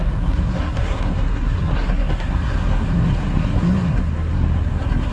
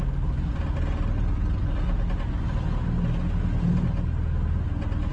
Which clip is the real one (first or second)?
second